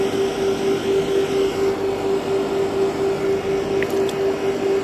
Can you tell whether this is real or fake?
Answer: real